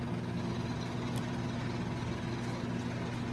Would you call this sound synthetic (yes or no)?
no